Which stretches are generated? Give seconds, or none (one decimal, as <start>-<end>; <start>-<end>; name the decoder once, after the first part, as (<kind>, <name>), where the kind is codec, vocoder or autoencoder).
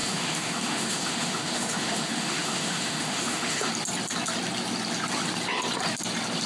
0.0-3.7 (autoencoder, DAC-VAE)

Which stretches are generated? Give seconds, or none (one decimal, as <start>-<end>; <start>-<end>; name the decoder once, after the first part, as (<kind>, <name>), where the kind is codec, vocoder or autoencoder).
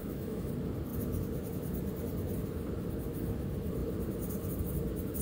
0.0-0.5 (autoencoder, DAC-VAE)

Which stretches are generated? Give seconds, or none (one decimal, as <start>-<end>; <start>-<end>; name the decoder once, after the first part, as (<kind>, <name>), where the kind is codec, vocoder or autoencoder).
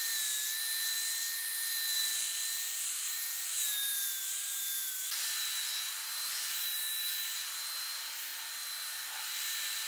0.0-8.3 (vocoder, BigVGAN v2); 8.9-9.9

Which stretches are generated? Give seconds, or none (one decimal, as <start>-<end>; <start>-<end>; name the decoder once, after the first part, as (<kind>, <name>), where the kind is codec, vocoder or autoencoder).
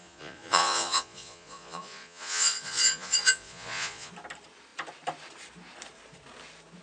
0.0-4.1 (vocoder, Vocos)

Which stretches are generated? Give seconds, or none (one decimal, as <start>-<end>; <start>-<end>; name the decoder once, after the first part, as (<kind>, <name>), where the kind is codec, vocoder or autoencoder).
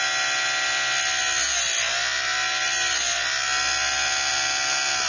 none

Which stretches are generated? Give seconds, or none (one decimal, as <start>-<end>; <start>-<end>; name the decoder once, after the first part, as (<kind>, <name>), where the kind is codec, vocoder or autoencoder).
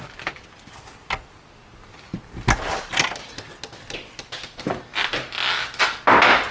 none